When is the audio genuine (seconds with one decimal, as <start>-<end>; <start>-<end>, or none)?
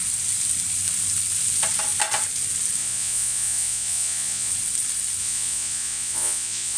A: 0.0-2.8; 4.5-5.2